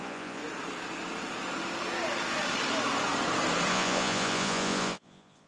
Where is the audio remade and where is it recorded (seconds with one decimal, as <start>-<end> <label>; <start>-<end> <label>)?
0.0-0.4 remade; 0.4-3.7 recorded; 3.7-5.5 remade